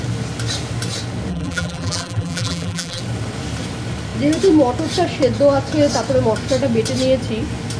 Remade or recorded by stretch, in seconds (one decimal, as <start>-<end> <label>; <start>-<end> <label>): 0.0-1.3 recorded; 1.3-3.0 remade; 3.0-7.8 recorded